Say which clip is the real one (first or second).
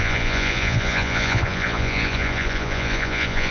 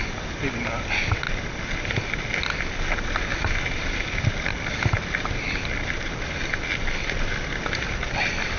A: second